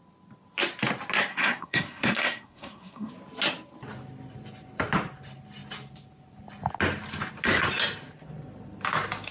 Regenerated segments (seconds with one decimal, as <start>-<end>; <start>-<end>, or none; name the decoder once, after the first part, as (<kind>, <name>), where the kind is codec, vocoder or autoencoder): 1.3-3.1 (codec, SNAC)